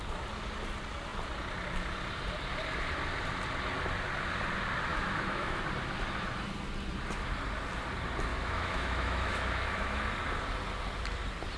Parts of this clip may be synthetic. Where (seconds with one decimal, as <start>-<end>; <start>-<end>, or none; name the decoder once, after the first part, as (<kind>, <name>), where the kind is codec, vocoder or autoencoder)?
4.9-5.6 (autoencoder, DAC-VAE); 8.3-10.0